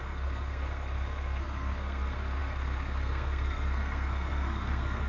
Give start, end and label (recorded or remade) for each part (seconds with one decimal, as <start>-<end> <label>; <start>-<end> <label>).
0.0-5.1 remade

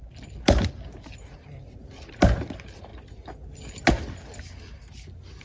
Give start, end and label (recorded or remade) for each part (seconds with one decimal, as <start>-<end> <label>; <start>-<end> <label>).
0.0-5.4 recorded

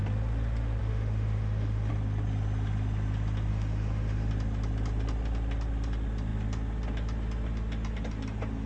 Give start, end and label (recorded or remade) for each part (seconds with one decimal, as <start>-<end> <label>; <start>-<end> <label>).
0.0-0.8 recorded; 0.8-1.9 remade; 1.9-3.5 recorded; 3.5-4.3 remade; 4.3-8.7 recorded

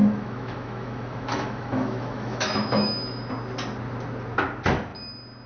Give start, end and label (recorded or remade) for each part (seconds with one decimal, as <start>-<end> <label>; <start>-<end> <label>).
0.0-3.3 remade; 3.3-5.5 recorded

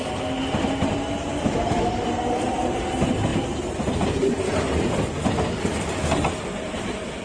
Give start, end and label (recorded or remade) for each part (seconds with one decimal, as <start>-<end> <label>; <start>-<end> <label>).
0.0-7.2 recorded